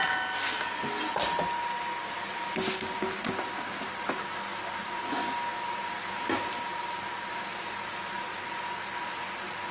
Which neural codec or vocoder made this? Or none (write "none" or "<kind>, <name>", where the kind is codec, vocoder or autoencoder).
none